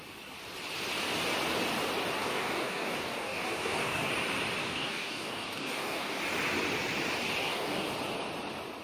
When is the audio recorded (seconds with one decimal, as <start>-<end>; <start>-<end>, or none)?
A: 0.0-2.2; 4.1-4.6; 6.2-7.4; 7.9-8.8